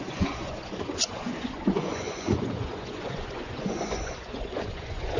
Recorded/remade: remade